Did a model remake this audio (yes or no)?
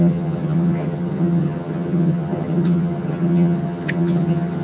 yes